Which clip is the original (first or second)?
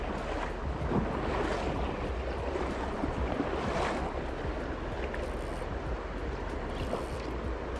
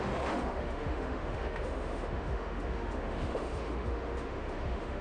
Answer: first